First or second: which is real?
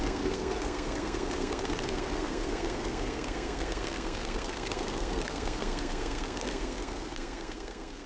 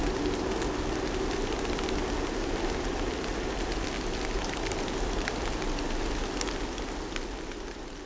second